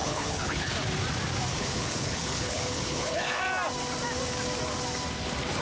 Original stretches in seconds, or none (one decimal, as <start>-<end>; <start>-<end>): 0.7-1.5; 3.4-5.6